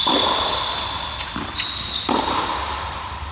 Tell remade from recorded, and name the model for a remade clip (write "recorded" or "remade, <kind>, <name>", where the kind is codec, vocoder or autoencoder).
recorded